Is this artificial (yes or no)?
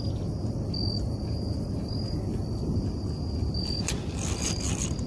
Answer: no